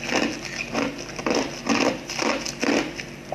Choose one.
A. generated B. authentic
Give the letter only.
B